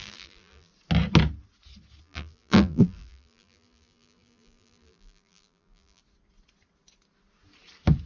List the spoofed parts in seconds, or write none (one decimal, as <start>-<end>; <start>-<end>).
0.0-0.7; 2.0-6.0